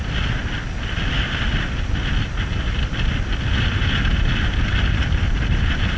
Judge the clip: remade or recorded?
recorded